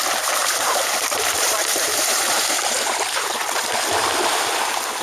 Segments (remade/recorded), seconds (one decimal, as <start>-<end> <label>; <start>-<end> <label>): 0.0-0.4 recorded; 0.4-3.4 remade; 3.4-5.0 recorded